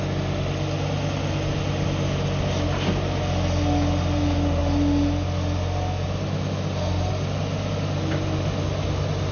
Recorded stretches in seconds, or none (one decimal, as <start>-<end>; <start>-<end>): 0.0-9.3